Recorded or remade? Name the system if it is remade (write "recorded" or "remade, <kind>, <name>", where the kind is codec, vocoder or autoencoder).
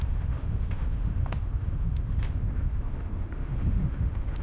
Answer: remade, autoencoder, DAC-VAE